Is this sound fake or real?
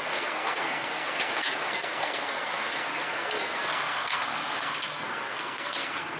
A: fake